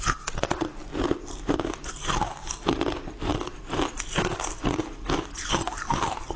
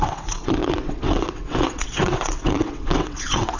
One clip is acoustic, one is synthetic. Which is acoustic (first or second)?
first